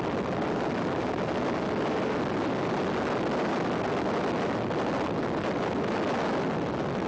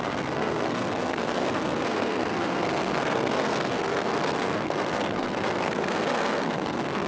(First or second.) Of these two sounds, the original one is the first